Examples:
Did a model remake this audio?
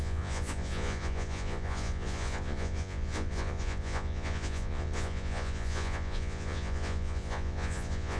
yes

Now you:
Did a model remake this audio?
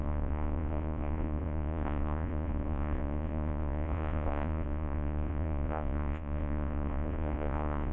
yes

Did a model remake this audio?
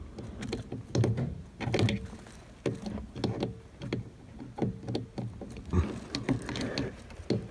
no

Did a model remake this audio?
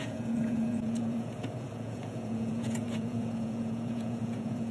yes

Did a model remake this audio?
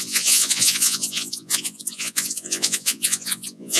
yes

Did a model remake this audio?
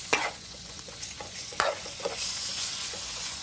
yes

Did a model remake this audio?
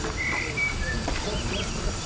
no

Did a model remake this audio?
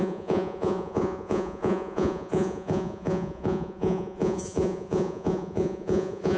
yes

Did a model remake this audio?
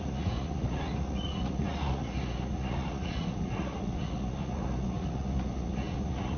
yes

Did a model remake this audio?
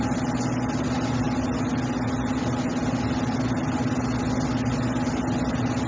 no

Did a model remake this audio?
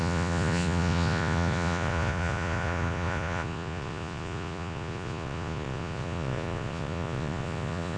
yes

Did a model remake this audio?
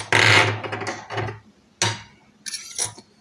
no